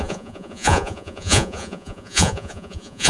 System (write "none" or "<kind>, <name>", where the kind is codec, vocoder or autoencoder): vocoder, Vocos